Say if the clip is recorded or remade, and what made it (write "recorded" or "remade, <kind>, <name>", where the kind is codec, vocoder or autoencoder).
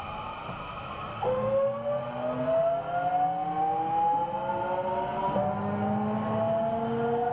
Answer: recorded